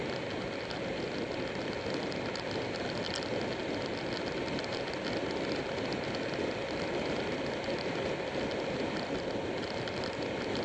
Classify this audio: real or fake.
real